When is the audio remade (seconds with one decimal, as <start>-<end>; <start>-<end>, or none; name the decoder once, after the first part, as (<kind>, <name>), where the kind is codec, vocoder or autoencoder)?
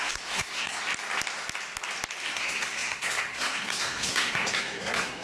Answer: 0.0-0.8 (codec, SNAC); 2.3-5.2